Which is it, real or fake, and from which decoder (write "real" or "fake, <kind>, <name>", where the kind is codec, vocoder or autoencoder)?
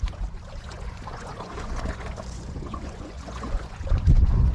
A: fake, vocoder, Vocos